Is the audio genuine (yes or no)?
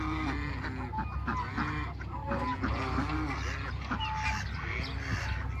yes